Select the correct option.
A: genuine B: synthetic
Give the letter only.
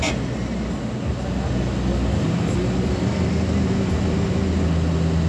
A